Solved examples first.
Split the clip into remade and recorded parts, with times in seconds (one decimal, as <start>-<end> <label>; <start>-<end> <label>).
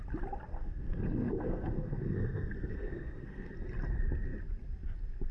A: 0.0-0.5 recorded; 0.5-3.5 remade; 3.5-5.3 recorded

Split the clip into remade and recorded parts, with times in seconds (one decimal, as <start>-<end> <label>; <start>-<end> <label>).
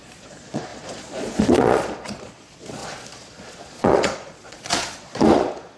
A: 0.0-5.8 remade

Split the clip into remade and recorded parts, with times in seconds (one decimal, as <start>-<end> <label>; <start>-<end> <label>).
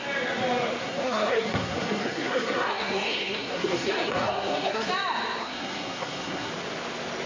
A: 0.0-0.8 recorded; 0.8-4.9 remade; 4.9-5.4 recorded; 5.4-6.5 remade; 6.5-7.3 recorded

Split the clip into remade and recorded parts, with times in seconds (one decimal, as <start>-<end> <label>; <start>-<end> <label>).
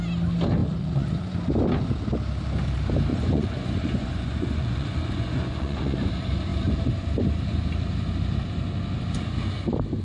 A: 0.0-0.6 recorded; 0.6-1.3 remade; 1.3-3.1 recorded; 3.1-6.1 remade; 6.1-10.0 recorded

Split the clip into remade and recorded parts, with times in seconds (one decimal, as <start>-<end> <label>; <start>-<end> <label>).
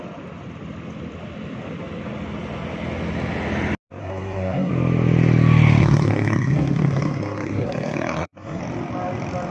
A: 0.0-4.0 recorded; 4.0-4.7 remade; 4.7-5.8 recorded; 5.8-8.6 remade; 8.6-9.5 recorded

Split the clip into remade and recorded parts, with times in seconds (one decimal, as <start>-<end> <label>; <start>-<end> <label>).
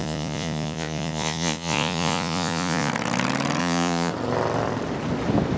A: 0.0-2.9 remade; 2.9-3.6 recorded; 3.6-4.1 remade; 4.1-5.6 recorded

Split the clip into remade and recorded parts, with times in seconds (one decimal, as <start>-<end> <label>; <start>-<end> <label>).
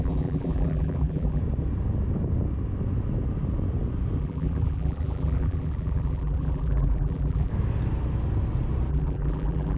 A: 0.0-1.4 remade; 1.4-4.2 recorded; 4.2-7.5 remade; 7.5-8.9 recorded; 8.9-9.8 remade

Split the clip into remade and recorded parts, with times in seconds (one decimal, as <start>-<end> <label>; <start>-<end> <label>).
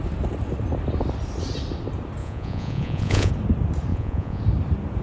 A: 0.0-2.2 recorded; 2.2-3.3 remade; 3.3-3.9 recorded; 3.9-4.4 remade; 4.4-5.0 recorded